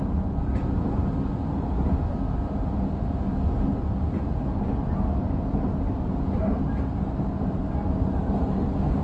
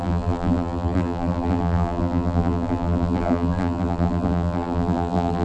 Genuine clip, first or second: first